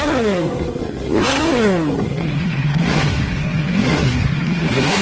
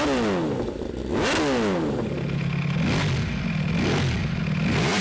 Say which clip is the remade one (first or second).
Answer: first